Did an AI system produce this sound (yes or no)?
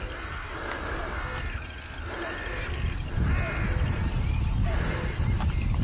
no